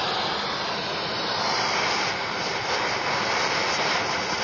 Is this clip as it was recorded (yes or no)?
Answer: yes